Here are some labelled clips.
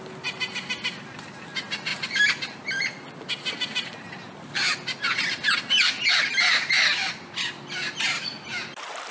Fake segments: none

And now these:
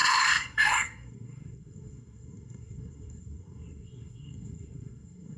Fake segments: 0.0-5.4

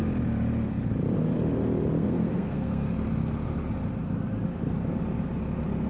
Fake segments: 2.0-2.9

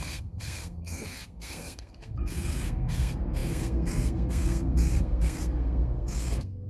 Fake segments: 0.0-6.7

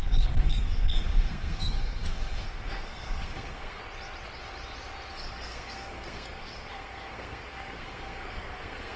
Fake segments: 0.0-3.8; 5.1-9.0